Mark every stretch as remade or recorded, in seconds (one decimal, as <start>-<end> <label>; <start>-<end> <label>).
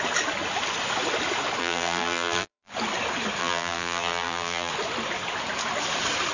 0.0-1.6 recorded; 1.6-2.7 remade; 2.7-3.4 recorded; 3.4-4.7 remade; 4.7-6.3 recorded